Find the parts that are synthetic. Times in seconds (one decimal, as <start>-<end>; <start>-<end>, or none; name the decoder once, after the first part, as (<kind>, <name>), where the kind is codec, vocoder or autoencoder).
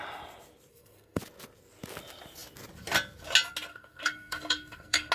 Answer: 0.7-1.2 (codec, SNAC); 3.7-5.1